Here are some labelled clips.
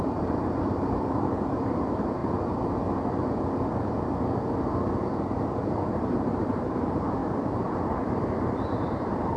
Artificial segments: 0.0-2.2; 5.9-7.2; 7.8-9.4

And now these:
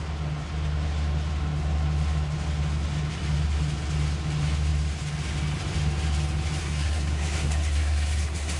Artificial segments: 6.6-8.6

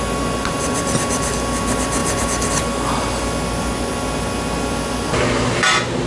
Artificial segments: none